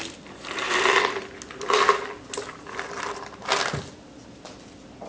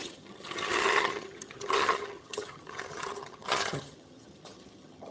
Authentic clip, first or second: first